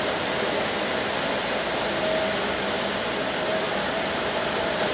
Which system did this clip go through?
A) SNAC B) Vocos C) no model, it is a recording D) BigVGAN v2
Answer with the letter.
C